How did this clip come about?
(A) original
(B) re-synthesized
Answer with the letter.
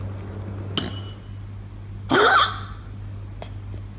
A